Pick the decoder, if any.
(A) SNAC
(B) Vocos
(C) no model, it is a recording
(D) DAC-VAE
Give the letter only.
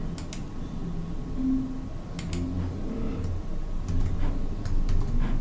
C